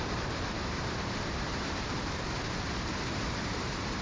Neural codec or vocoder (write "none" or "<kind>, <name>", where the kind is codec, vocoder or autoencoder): vocoder, BigVGAN v2